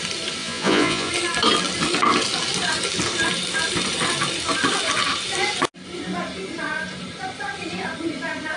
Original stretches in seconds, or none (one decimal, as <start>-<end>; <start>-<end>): 0.0-0.4; 1.1-8.6